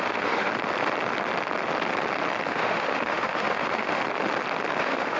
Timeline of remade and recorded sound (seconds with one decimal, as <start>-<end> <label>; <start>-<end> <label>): 0.0-0.5 remade; 0.5-2.5 recorded; 2.5-4.0 remade; 4.0-4.8 recorded; 4.8-5.2 remade